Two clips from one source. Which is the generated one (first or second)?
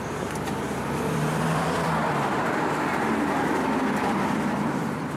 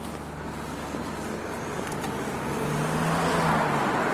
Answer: first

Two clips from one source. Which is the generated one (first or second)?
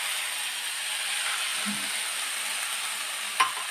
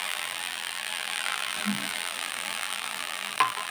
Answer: second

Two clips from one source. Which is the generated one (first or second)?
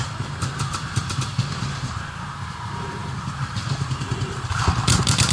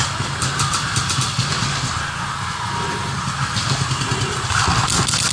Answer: first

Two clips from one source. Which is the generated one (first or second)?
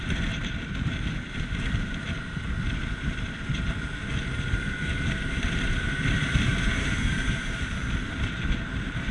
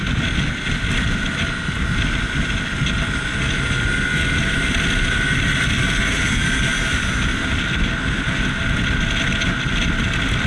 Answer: first